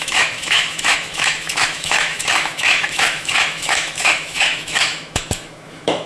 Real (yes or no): no